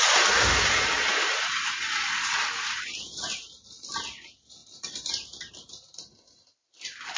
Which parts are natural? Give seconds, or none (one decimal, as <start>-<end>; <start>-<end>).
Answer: 0.0-7.2

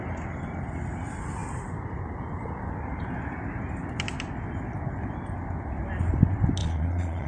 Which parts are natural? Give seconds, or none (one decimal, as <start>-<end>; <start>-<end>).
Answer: 0.0-6.6

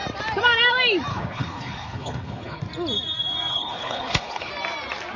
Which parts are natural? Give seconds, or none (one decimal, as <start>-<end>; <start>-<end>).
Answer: 0.0-1.1; 2.6-3.5; 4.5-5.2

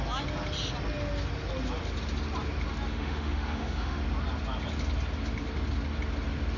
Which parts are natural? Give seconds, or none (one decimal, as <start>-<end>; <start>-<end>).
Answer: 0.0-2.9; 4.0-6.6

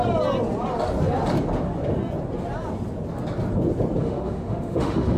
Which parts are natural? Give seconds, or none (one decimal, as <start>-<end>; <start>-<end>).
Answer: 0.0-4.0